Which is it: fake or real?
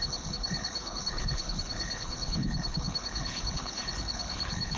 fake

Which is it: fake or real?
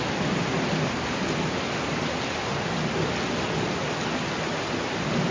real